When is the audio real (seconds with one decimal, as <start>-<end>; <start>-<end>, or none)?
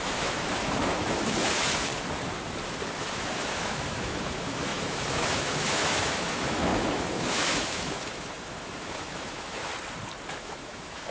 1.9-3.0; 9.7-10.3